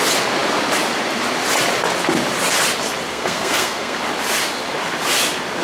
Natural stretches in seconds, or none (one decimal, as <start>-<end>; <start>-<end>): 0.0-3.1; 4.0-5.6